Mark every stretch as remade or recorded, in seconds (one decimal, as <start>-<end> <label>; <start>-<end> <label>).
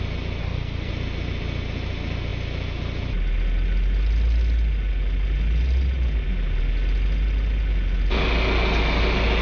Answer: 0.0-0.4 recorded; 0.4-0.9 remade; 0.9-9.4 recorded